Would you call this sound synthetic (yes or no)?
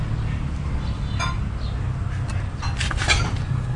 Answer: no